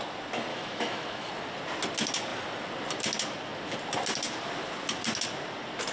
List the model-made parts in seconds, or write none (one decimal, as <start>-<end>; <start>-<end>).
0.5-1.3

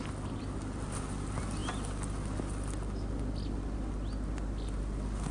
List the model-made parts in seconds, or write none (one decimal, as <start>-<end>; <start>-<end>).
none

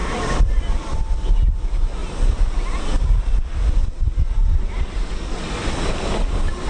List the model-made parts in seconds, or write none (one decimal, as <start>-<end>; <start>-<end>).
0.0-0.5

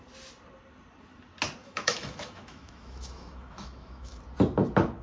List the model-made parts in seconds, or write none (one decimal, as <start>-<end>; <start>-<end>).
1.6-4.2

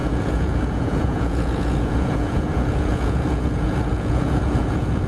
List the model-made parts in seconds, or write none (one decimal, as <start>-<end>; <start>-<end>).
0.0-5.1

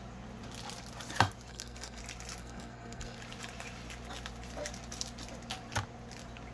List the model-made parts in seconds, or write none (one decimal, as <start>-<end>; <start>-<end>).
1.5-2.0; 2.4-3.2

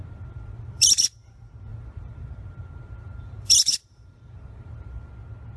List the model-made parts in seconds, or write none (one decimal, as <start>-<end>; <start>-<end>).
0.0-1.0; 1.7-5.1